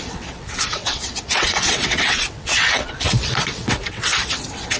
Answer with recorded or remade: remade